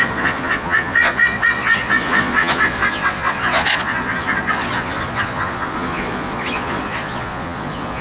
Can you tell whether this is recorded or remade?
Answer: remade